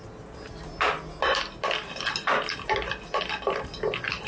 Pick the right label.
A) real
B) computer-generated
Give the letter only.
A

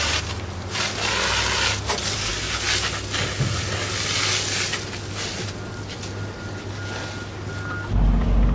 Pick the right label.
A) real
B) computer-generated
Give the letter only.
A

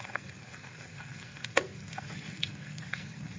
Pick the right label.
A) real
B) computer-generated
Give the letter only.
B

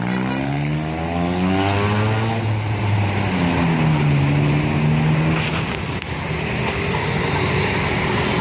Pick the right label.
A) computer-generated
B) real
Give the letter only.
B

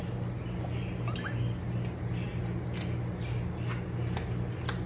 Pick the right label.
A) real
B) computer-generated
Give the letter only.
A